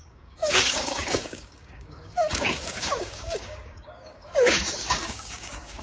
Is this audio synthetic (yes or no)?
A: yes